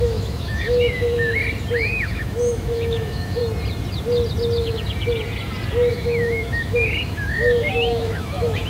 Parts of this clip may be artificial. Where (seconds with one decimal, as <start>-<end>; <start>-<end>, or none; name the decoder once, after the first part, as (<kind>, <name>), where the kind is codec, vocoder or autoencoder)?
0.0-1.4 (autoencoder, DAC-VAE); 2.0-3.4; 5.9-8.7